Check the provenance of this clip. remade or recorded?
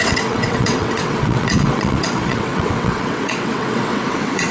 remade